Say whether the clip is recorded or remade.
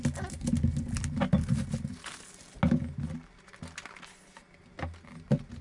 recorded